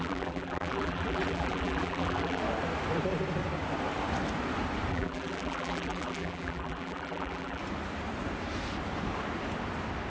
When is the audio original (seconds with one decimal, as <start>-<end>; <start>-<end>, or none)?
2.4-4.9; 7.6-10.1